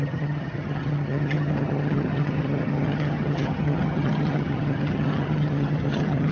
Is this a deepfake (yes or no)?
yes